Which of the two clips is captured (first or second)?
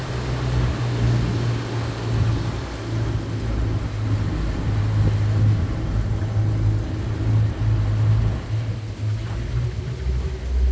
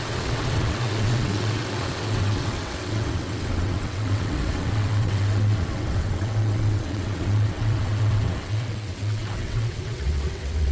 first